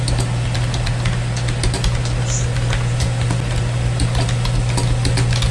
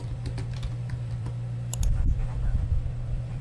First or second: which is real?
first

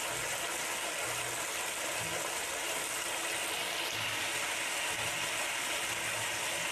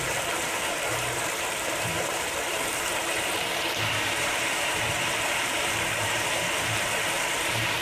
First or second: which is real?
first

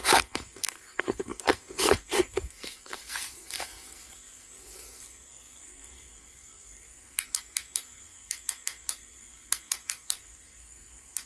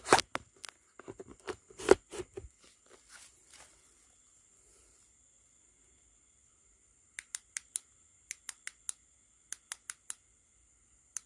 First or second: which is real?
second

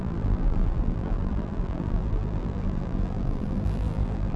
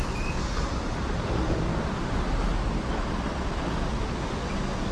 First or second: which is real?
second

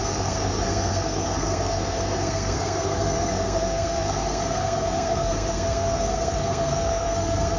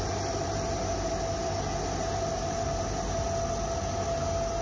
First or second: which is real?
second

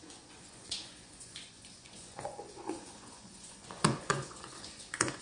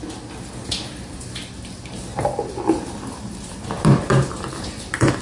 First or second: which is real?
second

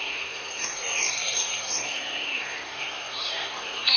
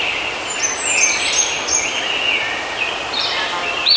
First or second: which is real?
second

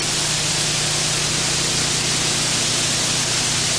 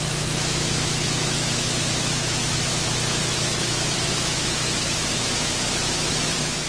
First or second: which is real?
first